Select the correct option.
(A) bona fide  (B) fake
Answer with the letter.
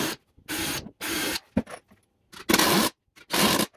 A